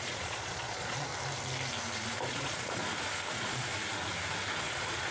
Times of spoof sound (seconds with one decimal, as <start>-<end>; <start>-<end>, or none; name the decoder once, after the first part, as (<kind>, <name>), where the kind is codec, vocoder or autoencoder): 0.0-1.1 (vocoder, Vocos); 2.3-2.8; 3.3-3.7; 4.6-5.1